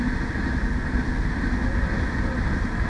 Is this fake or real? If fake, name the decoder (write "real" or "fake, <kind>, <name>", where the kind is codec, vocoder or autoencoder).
real